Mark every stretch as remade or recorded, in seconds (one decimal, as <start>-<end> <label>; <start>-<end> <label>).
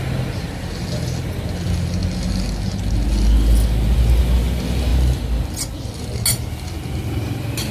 0.0-7.7 recorded